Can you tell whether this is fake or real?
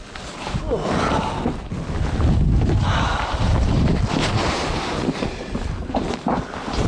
real